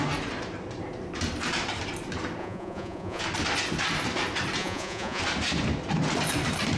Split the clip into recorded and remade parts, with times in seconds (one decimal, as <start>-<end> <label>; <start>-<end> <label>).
0.0-2.4 recorded; 2.4-3.2 remade; 3.2-4.6 recorded; 4.6-5.2 remade; 5.2-6.8 recorded